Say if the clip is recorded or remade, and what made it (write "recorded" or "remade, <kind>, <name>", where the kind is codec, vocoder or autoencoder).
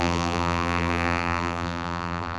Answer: remade, vocoder, BigVGAN v2